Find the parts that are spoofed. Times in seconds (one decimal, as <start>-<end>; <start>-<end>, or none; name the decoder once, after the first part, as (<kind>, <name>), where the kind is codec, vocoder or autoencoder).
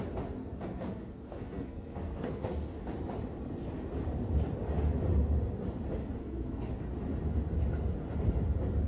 0.4-2.7 (codec, SNAC); 6.2-6.7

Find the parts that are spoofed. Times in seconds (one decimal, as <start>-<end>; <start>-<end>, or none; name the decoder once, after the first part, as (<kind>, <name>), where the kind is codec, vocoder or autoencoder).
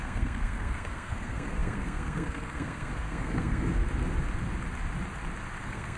0.0-3.8 (codec, SNAC); 5.6-6.0